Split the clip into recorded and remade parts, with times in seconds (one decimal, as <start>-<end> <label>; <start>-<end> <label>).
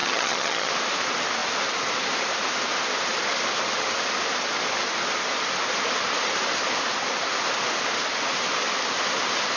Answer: 0.0-0.7 remade; 0.7-9.6 recorded